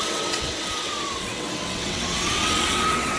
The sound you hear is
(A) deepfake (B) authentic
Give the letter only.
A